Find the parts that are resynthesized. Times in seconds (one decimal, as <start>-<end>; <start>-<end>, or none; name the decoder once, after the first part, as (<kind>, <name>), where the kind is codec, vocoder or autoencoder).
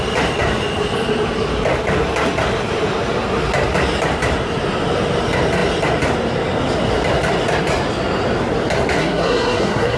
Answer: 9.0-10.0 (codec, SNAC)